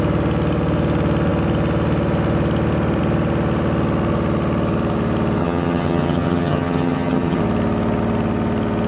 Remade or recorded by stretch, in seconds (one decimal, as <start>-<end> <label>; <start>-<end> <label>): 0.0-5.4 recorded; 5.4-7.4 remade; 7.4-8.9 recorded